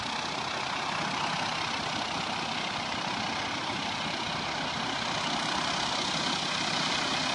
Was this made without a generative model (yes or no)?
yes